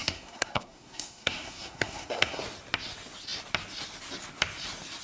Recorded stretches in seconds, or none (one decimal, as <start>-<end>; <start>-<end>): 2.4-5.0